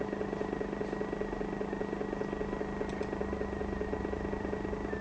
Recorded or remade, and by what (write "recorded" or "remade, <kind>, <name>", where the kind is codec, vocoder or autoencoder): recorded